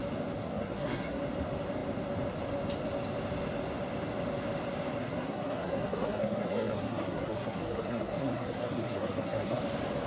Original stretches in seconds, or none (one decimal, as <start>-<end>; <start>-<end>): 0.0-0.4; 1.2-5.0; 9.6-10.1